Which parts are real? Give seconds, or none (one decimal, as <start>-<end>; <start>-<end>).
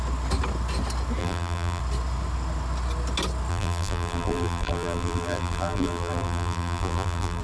0.0-1.2; 1.8-3.5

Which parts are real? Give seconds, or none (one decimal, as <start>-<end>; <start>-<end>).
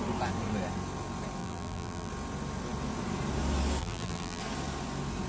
0.0-1.4; 2.1-3.8; 4.4-5.3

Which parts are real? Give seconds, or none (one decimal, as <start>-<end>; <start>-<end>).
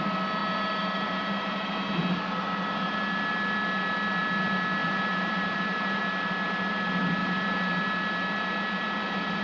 0.0-0.4; 2.0-4.8; 6.0-7.2; 7.8-9.4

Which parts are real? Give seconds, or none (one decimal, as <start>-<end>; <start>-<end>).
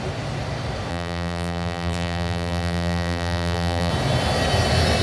0.0-0.9; 3.9-5.0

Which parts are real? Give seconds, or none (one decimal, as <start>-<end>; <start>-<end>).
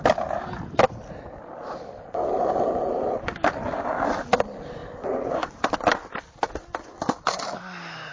0.0-8.1